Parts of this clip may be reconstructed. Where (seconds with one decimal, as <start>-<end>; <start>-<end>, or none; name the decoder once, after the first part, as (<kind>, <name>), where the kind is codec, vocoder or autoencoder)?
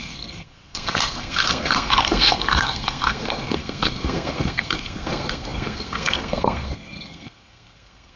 0.0-8.2 (codec, SNAC)